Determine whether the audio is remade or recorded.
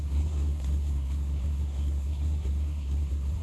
remade